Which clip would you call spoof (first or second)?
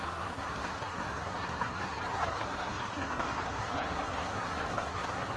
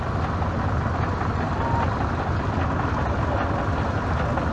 first